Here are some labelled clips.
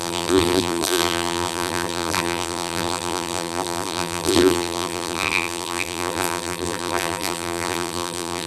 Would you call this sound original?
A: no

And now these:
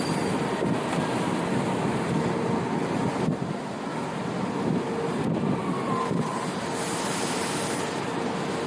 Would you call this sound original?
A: yes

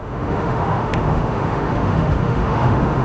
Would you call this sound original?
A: no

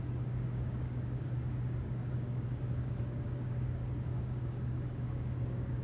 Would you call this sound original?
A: no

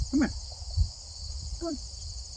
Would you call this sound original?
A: no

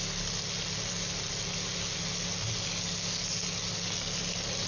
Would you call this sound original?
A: yes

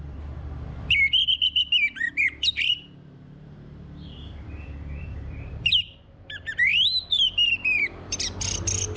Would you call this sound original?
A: no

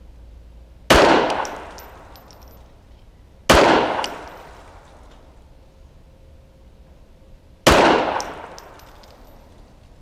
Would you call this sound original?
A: yes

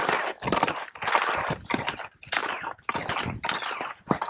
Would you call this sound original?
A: yes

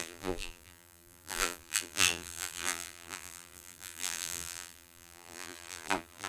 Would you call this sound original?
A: no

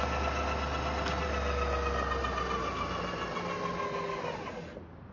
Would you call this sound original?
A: yes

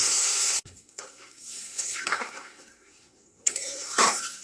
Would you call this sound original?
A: no